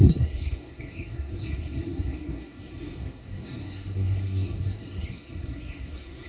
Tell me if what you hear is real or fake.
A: fake